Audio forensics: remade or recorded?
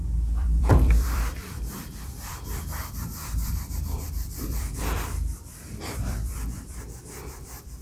remade